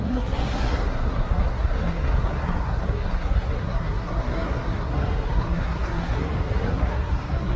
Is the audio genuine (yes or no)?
no